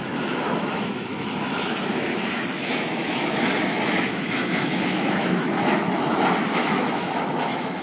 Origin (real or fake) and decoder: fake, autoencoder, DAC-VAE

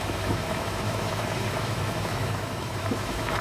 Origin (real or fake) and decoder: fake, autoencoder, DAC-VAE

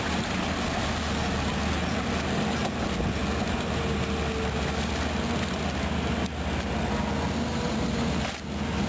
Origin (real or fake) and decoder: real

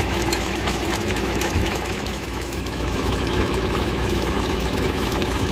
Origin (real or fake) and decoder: fake, autoencoder, DAC-VAE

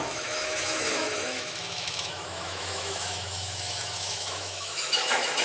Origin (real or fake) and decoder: fake, autoencoder, DAC-VAE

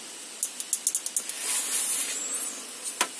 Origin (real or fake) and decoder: real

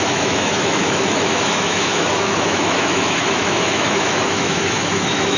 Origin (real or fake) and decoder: fake, autoencoder, DAC-VAE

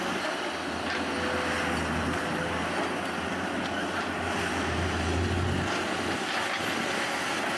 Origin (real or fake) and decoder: real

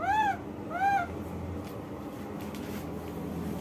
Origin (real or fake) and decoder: real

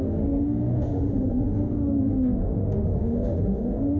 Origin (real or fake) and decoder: fake, autoencoder, DAC-VAE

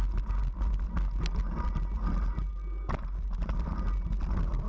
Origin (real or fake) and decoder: real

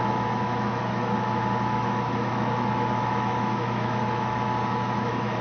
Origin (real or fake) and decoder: fake, autoencoder, DAC-VAE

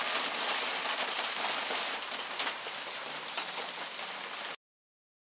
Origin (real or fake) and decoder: real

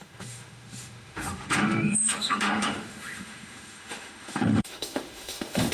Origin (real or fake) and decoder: fake, autoencoder, DAC-VAE